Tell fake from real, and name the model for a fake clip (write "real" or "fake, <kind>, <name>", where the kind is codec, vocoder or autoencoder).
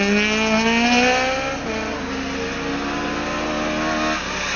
real